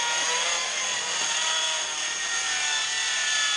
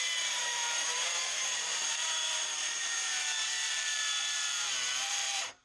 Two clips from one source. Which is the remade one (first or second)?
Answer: second